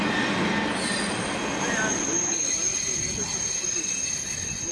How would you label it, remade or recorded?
recorded